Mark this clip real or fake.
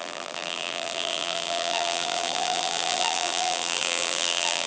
fake